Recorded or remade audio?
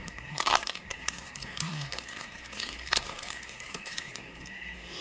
remade